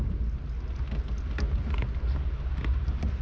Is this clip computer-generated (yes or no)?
no